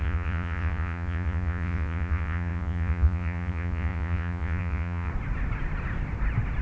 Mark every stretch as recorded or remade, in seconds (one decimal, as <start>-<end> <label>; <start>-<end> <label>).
0.0-5.1 remade; 5.1-6.6 recorded